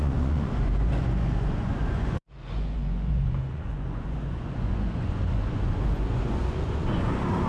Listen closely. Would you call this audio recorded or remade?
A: remade